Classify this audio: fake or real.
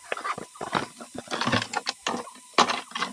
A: real